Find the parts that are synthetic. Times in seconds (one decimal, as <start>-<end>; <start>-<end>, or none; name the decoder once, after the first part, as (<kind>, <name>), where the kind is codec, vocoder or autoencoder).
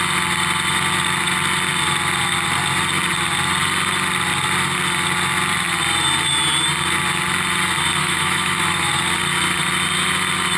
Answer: 8.0-8.9 (autoencoder, DAC-VAE)